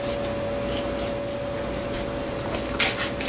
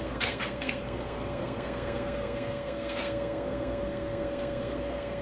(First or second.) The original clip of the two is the first